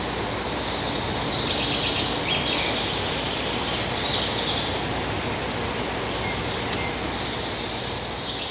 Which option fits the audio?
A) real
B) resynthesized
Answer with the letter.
A